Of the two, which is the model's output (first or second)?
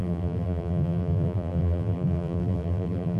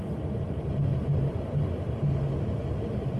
first